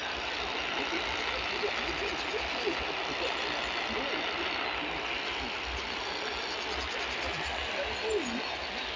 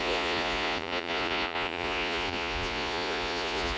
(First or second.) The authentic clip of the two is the first